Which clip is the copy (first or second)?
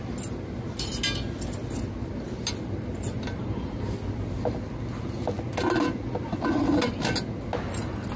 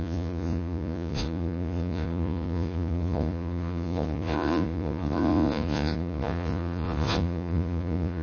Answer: second